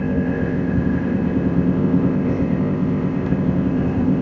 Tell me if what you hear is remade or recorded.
remade